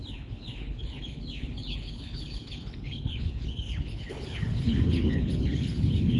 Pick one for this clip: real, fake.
fake